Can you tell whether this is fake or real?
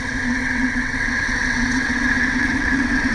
fake